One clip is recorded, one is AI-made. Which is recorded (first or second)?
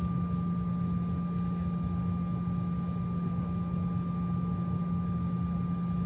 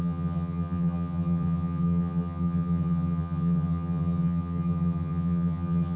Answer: first